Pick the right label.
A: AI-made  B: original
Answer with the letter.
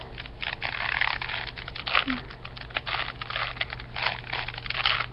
B